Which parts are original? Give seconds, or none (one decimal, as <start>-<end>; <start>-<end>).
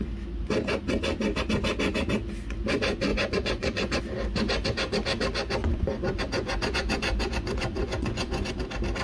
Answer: 0.0-3.1; 4.0-5.6; 8.5-9.0